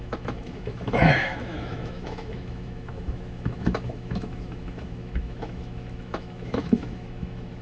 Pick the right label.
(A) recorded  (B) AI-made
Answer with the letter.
B